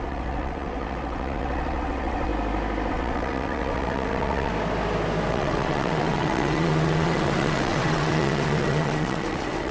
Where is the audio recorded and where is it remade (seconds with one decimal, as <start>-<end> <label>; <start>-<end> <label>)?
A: 0.0-2.3 remade; 2.3-2.9 recorded; 2.9-4.5 remade; 4.5-5.3 recorded; 5.3-9.7 remade